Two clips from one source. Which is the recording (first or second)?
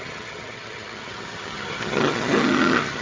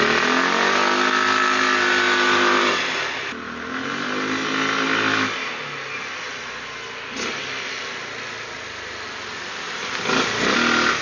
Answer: second